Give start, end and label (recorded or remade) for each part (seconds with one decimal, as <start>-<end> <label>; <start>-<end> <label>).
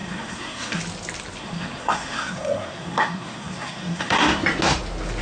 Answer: 0.0-0.8 remade; 0.8-1.4 recorded; 1.4-4.4 remade; 4.4-5.2 recorded